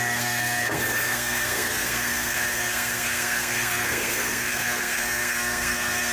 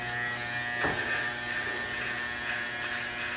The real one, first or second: second